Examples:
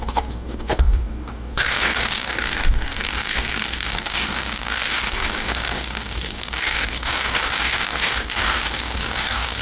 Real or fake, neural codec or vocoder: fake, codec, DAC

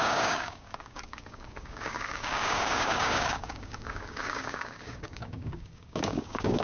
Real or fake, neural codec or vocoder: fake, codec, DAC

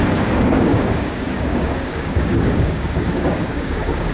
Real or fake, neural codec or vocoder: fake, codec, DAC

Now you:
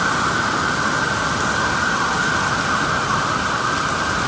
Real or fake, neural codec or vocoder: real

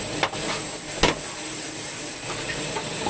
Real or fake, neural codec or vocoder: real